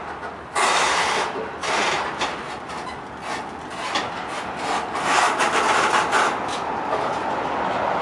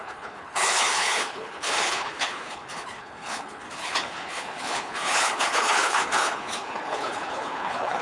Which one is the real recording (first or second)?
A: first